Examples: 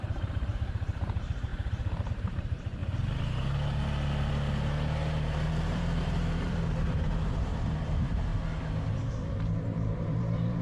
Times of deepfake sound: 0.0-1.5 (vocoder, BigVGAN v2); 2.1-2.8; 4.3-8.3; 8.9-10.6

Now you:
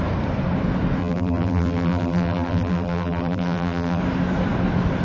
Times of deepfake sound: 1.0-4.0 (vocoder, BigVGAN v2)

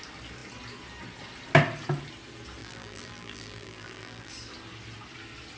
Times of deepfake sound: 2.6-4.3 (vocoder, BigVGAN v2)

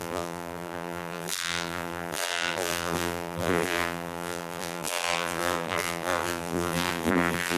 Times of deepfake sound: 0.0-7.6 (vocoder, BigVGAN v2)

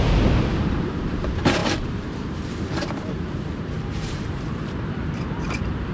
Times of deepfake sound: 0.0-5.9 (vocoder, BigVGAN v2)

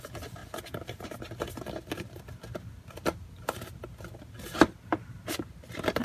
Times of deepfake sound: none

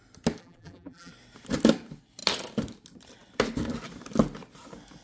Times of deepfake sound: 0.4-1.1 (vocoder, BigVGAN v2)